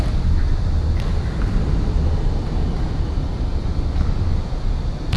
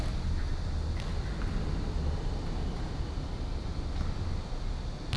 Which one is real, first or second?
second